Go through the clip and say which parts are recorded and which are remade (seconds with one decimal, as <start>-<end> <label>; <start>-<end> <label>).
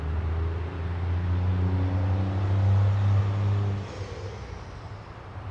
0.0-5.5 recorded